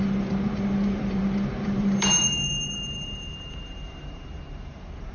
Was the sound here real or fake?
fake